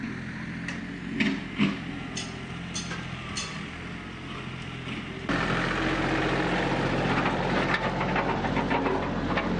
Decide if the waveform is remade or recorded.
recorded